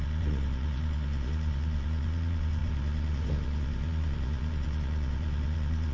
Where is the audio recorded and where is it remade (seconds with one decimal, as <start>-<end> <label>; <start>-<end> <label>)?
0.0-5.9 remade